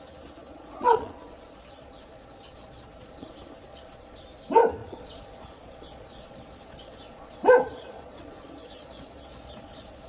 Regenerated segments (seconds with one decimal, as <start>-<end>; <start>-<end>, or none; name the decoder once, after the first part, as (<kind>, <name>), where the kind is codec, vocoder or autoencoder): 0.4-3.3 (vocoder, Vocos); 3.7-4.2; 4.8-10.1